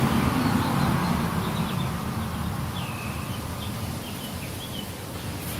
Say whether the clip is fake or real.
real